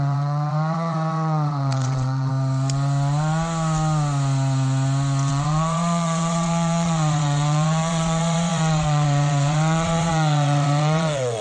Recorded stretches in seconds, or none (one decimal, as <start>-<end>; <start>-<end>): 2.3-5.3